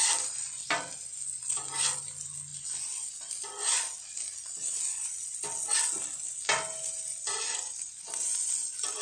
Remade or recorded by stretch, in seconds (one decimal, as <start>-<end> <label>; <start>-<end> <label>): 0.0-9.0 recorded